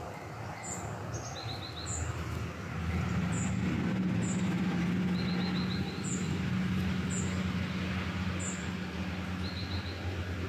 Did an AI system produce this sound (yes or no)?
no